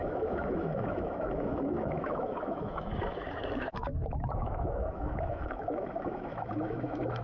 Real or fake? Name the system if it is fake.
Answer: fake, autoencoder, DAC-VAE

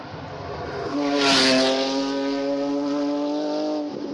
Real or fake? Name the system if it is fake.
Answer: real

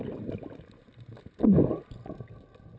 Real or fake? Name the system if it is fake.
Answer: real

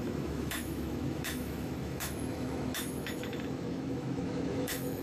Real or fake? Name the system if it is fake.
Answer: fake, autoencoder, DAC-VAE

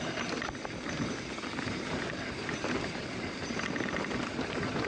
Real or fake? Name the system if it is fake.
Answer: real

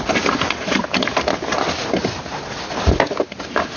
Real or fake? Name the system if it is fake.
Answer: real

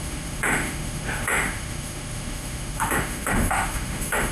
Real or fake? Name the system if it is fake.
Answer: fake, autoencoder, DAC-VAE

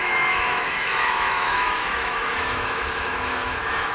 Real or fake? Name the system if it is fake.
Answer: fake, autoencoder, DAC-VAE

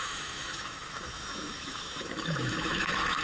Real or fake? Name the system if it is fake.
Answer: fake, autoencoder, DAC-VAE